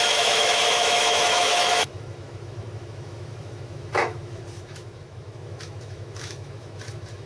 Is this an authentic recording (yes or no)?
no